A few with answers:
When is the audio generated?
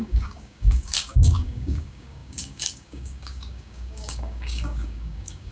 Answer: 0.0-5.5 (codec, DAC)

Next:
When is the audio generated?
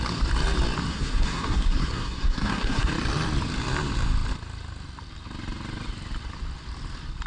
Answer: 0.9-2.9 (codec, SNAC)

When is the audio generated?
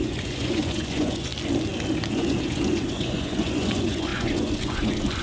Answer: 0.0-1.3 (vocoder, Vocos); 2.1-5.2